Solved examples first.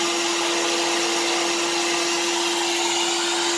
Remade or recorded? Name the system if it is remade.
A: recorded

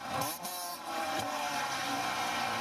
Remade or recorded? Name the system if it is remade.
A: remade, vocoder, BigVGAN v2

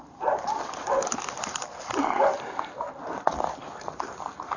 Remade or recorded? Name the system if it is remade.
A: recorded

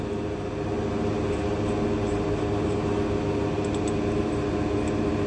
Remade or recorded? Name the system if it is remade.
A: recorded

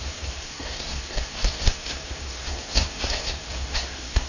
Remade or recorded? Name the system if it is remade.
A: remade, codec, SNAC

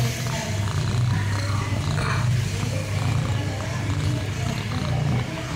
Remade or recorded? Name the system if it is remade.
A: recorded